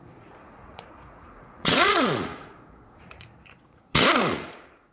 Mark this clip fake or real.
fake